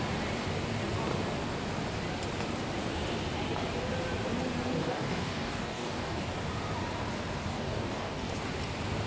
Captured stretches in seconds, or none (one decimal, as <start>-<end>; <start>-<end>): 0.0-4.8; 6.2-7.5; 8.3-9.1